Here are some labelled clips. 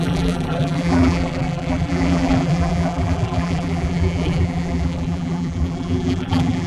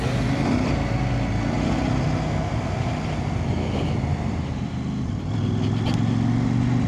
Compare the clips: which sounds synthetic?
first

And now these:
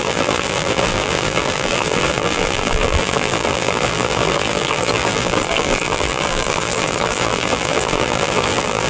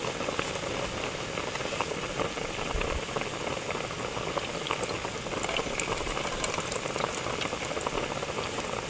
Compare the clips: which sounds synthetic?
first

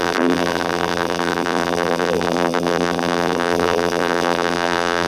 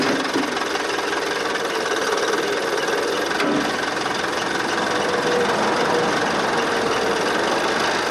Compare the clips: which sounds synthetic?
first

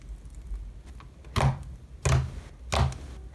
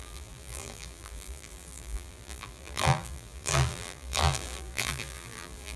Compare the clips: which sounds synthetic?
second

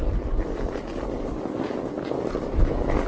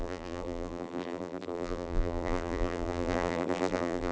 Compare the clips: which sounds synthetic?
second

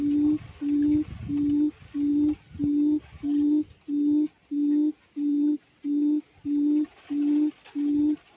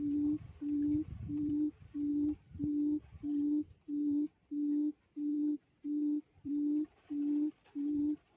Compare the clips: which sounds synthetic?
second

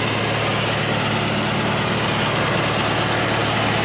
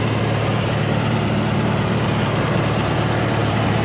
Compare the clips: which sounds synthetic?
second